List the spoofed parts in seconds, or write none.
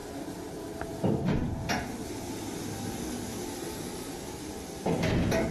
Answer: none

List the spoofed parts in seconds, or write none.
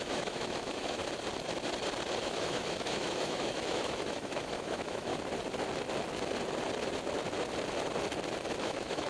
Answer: 0.0-1.0 (autoencoder, DAC-VAE); 2.2-5.1; 8.6-9.1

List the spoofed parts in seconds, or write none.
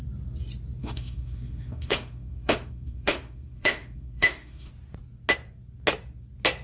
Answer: 0.8-4.7 (autoencoder, DAC-VAE)